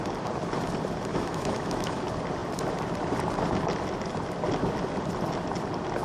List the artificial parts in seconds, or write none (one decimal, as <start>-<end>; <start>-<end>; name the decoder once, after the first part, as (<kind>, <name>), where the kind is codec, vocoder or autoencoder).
1.1-2.0 (autoencoder, DAC-VAE)